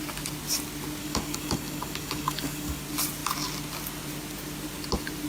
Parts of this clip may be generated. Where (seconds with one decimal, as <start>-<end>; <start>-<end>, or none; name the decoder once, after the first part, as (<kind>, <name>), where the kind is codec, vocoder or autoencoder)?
1.0-2.8 (codec, DAC)